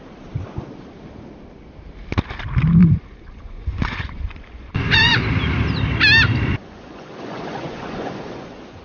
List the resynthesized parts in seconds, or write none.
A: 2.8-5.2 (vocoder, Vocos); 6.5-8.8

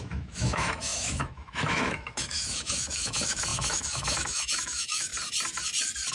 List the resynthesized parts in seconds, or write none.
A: 0.0-5.1 (autoencoder, DAC-VAE)

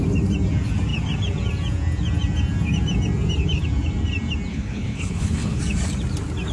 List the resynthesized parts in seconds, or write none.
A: 4.5-5.6 (codec, HILCodec)

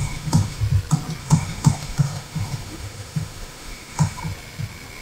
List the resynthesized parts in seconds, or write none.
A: 0.0-0.6 (autoencoder, DAC-VAE); 1.2-4.2

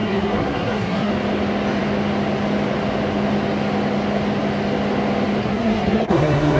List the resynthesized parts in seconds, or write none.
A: 0.0-1.1 (codec, SNAC); 5.4-6.6